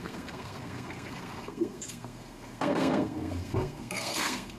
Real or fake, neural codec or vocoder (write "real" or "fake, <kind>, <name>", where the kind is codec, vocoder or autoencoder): fake, codec, SNAC